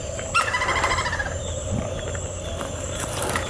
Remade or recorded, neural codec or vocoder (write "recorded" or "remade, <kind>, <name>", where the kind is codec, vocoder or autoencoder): remade, vocoder, BigVGAN v2